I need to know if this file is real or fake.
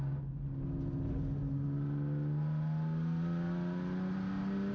real